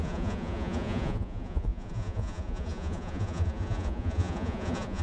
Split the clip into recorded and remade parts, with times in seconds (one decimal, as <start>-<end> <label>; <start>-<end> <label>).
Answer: 0.0-5.0 remade